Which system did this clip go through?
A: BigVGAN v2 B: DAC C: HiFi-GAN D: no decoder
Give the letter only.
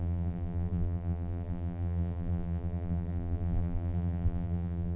A